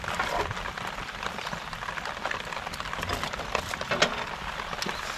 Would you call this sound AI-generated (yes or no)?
no